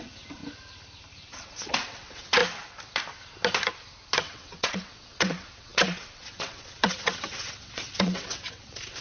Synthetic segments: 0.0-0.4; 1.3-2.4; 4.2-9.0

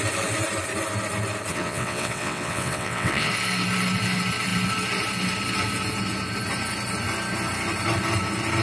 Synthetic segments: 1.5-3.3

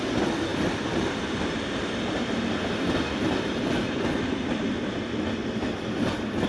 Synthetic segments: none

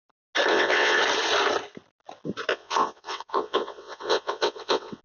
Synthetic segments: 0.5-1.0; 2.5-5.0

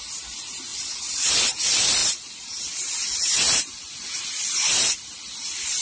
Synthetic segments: 0.7-1.3

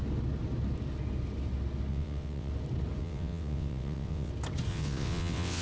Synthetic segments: 1.9-2.5; 3.0-4.3; 4.7-5.6

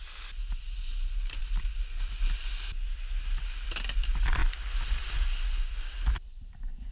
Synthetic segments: none

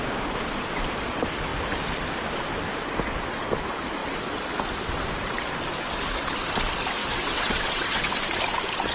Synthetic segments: 7.0-8.2